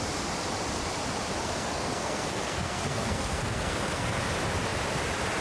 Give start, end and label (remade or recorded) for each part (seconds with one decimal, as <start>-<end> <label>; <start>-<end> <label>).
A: 0.0-1.4 recorded; 1.4-4.2 remade; 4.2-5.4 recorded